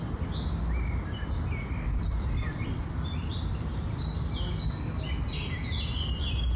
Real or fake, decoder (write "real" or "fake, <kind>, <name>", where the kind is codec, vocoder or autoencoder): real